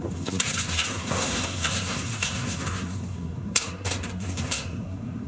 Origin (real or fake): fake